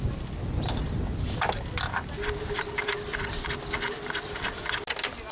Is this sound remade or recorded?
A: recorded